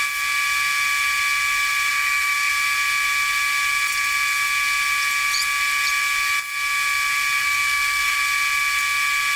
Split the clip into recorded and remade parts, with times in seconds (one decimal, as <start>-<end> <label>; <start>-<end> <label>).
0.0-1.9 recorded; 1.9-2.5 remade; 2.5-7.4 recorded; 7.4-8.2 remade; 8.2-9.4 recorded